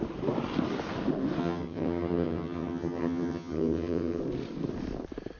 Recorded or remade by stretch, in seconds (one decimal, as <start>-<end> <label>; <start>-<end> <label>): 0.0-1.4 recorded; 1.4-4.2 remade; 4.2-5.4 recorded